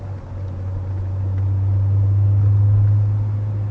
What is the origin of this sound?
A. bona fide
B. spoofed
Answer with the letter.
A